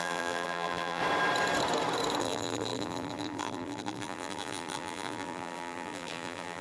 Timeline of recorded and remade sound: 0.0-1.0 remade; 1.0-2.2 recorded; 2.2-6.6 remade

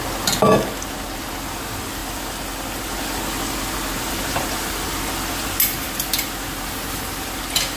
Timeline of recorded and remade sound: 0.0-7.8 recorded

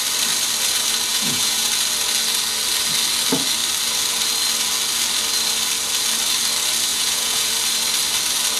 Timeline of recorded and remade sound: 0.0-1.1 recorded; 1.1-1.7 remade; 1.7-6.9 recorded; 6.9-7.5 remade; 7.5-8.6 recorded

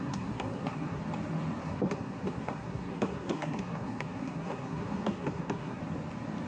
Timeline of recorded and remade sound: 0.0-1.0 remade; 1.0-1.6 recorded; 1.6-5.8 remade; 5.8-6.5 recorded

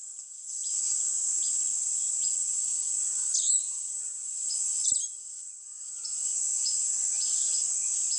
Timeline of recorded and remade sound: 0.0-5.7 recorded; 5.7-8.2 remade